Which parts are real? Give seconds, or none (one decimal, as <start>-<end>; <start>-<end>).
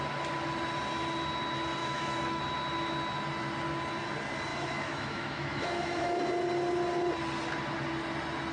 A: 0.0-1.8; 2.4-4.5; 6.2-8.5